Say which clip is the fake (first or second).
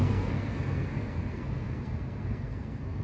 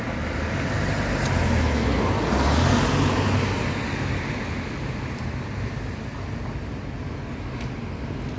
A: first